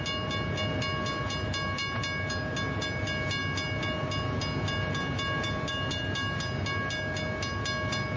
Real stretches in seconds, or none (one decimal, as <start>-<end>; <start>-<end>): 0.0-8.2